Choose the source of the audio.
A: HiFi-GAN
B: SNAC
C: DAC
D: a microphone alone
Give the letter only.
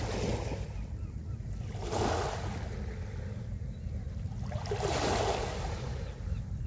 D